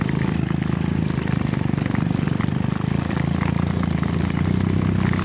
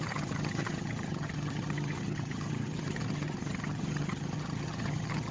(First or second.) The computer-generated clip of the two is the second